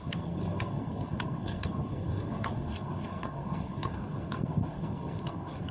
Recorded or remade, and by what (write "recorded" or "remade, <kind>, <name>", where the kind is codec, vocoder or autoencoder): remade, codec, SNAC